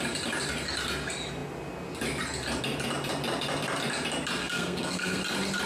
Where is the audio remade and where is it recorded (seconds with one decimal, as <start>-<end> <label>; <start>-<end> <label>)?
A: 0.0-4.4 recorded; 4.4-5.2 remade; 5.2-5.7 recorded